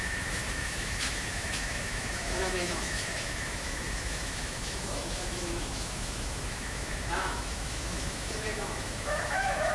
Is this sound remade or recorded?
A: remade